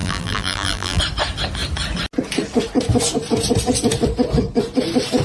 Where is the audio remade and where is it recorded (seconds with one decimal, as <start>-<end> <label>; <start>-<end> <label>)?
0.0-1.0 remade; 1.0-5.2 recorded